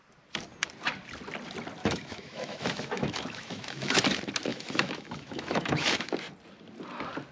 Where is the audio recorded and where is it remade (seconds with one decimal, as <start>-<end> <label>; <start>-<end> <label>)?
0.0-1.8 recorded; 1.8-4.0 remade; 4.0-4.5 recorded; 4.5-6.1 remade; 6.1-7.3 recorded